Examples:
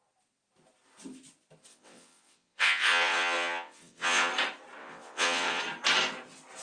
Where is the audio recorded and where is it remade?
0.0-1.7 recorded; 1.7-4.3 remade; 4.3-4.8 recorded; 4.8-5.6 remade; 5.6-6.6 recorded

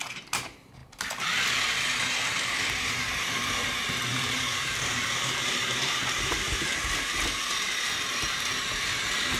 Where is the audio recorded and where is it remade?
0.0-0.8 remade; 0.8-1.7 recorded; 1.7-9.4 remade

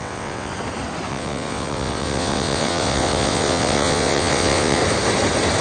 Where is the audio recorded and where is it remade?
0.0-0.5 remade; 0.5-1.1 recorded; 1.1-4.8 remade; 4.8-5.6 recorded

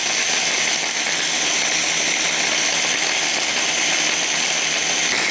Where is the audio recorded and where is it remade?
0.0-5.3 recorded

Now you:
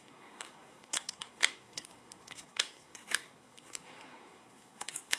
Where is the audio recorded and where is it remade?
0.0-5.2 remade

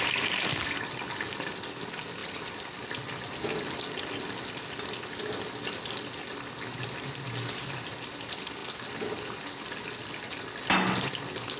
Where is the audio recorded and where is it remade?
0.0-11.6 recorded

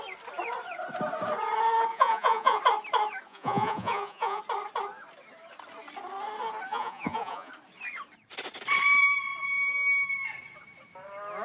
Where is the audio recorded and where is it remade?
0.0-1.9 recorded; 1.9-2.6 remade; 2.6-3.3 recorded; 3.3-4.4 remade; 4.4-6.7 recorded; 6.7-7.5 remade; 7.5-11.4 recorded